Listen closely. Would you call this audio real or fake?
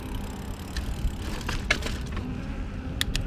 real